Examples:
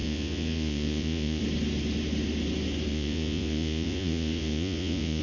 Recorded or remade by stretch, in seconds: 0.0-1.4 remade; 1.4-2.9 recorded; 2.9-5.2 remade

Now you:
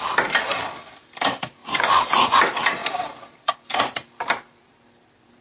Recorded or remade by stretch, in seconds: 0.0-1.6 recorded; 1.6-2.4 remade; 2.4-5.4 recorded